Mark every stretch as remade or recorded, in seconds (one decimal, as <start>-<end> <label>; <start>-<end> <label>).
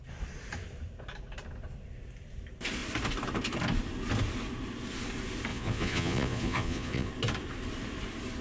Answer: 0.0-5.5 recorded; 5.5-7.1 remade; 7.1-8.4 recorded